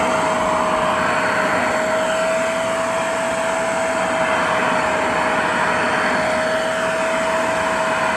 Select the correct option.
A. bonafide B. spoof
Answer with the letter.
A